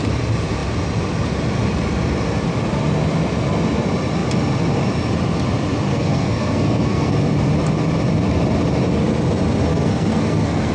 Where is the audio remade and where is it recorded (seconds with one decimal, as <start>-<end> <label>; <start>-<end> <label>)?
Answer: 0.0-5.9 recorded; 5.9-7.1 remade; 7.1-9.7 recorded; 9.7-10.7 remade